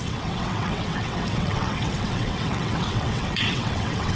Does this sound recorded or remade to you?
remade